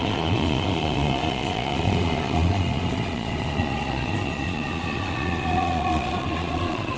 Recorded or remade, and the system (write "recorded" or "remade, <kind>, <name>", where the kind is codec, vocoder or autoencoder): remade, vocoder, Vocos